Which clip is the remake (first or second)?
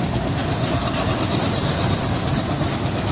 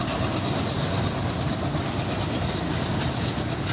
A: first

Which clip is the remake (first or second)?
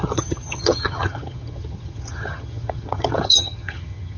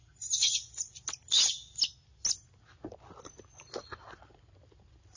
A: first